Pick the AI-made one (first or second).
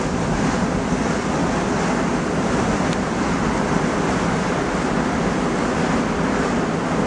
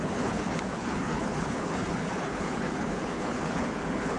second